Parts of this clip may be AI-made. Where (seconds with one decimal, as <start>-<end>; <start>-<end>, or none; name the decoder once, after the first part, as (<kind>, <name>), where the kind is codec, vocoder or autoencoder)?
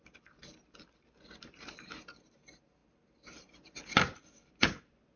none